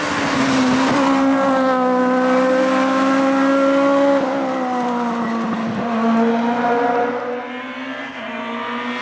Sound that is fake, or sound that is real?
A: real